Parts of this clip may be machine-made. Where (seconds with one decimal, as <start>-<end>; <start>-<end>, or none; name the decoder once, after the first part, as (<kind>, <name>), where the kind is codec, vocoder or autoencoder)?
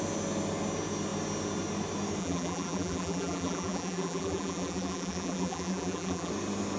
2.2-6.3 (vocoder, BigVGAN v2)